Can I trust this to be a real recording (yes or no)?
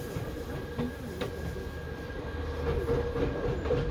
yes